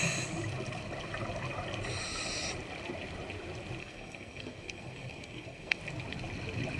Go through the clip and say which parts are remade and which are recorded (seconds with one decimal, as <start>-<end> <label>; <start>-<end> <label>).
0.0-3.8 recorded; 3.8-5.8 remade; 5.8-6.8 recorded